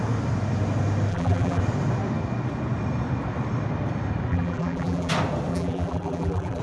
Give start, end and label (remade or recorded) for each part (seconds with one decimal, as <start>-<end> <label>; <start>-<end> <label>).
0.0-1.1 recorded; 1.1-1.6 remade; 1.6-4.3 recorded; 4.3-5.1 remade; 5.1-5.5 recorded; 5.5-6.6 remade